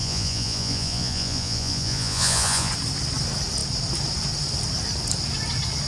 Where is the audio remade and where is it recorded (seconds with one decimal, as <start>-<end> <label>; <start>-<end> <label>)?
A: 0.0-2.7 remade; 2.7-5.9 recorded